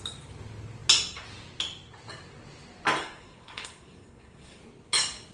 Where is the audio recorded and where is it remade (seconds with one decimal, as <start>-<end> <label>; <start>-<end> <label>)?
0.0-3.0 recorded; 3.0-4.6 remade; 4.6-5.3 recorded